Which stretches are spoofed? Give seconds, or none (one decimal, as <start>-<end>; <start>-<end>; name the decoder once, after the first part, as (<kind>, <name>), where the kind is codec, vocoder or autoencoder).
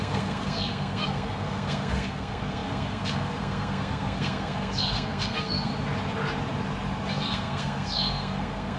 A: 0.0-5.7 (codec, SNAC); 7.1-8.8